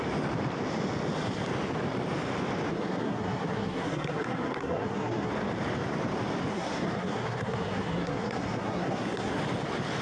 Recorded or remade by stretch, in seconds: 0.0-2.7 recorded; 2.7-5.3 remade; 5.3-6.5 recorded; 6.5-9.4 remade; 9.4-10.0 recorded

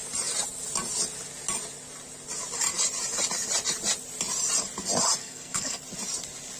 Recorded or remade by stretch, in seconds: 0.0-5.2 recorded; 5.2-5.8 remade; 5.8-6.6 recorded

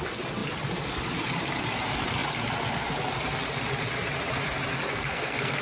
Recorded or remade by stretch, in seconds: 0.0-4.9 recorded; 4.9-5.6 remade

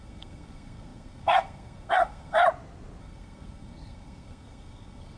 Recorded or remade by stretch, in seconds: 0.0-2.4 remade; 2.4-3.0 recorded; 3.0-5.2 remade

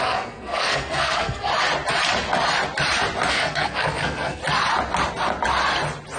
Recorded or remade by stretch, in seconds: 0.0-1.5 remade; 1.5-3.3 recorded; 3.3-4.4 remade; 4.4-6.2 recorded

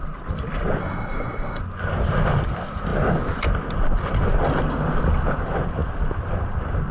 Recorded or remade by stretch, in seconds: 0.0-0.8 recorded; 0.8-1.6 remade; 1.6-6.9 recorded

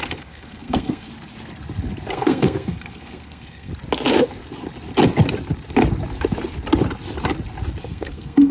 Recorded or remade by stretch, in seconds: 0.0-1.1 remade; 1.1-2.1 recorded; 2.1-3.7 remade; 3.7-7.8 recorded; 7.8-8.5 remade